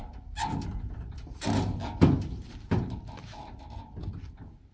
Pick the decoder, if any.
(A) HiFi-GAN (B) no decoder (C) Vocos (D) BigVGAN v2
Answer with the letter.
B